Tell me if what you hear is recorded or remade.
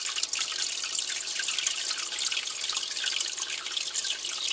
recorded